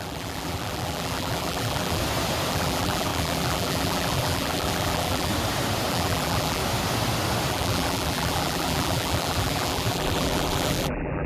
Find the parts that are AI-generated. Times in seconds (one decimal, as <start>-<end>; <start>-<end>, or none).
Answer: 0.0-2.0; 2.5-5.3; 5.9-6.6; 7.5-11.3